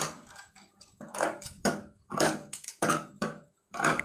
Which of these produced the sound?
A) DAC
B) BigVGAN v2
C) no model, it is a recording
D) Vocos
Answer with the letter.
A